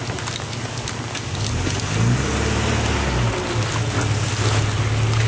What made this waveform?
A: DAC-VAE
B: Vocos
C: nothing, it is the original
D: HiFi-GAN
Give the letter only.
C